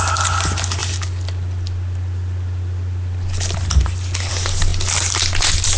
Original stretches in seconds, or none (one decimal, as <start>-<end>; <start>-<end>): 0.0-5.8